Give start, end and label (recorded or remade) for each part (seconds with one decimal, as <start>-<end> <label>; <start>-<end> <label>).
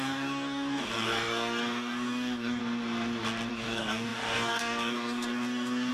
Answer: 0.0-2.6 remade; 2.6-3.5 recorded; 3.5-5.9 remade